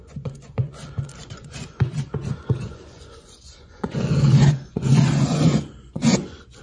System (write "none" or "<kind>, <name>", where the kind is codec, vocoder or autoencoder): vocoder, Vocos